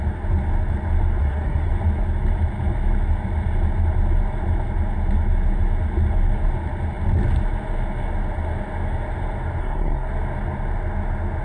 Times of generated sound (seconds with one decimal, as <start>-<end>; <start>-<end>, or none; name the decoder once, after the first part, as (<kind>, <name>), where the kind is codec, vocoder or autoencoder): 1.2-1.7 (codec, SNAC); 9.6-10.1